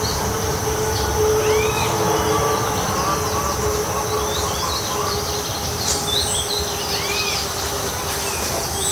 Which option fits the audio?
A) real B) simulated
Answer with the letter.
A